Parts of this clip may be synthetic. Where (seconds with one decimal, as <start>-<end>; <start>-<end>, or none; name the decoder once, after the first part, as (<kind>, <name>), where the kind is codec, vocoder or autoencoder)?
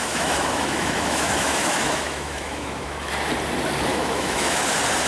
0.0-3.1 (autoencoder, DAC-VAE); 3.9-4.6